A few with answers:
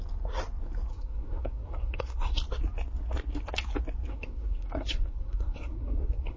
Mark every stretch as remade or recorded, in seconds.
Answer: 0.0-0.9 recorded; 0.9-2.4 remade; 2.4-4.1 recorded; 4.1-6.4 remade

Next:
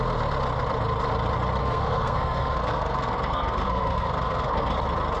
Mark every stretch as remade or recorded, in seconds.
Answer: 0.0-1.6 recorded; 1.6-4.7 remade; 4.7-5.2 recorded